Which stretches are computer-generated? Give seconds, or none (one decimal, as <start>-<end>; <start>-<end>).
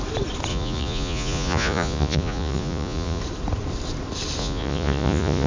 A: 0.5-3.2; 4.4-5.5